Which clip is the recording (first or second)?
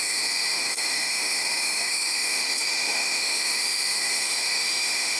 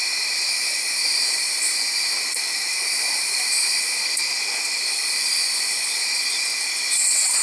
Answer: second